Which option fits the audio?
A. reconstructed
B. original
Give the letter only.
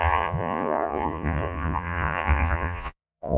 A